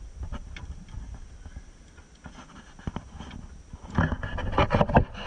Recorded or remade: recorded